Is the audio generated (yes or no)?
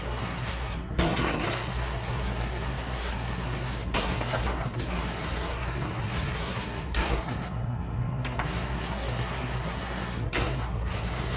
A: yes